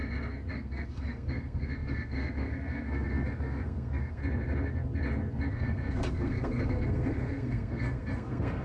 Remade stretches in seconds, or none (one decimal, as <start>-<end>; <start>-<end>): 0.5-4.2; 5.5-8.6